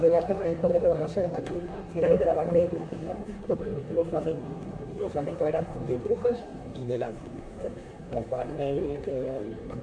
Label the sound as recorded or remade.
remade